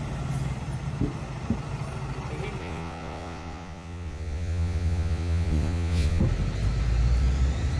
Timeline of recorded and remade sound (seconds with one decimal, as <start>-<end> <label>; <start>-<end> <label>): 0.0-2.6 recorded; 2.6-6.2 remade; 6.2-7.8 recorded